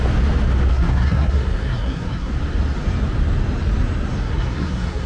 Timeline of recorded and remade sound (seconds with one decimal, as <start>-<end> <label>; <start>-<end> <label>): 0.0-0.7 recorded; 0.7-2.3 remade; 2.3-4.2 recorded; 4.2-5.1 remade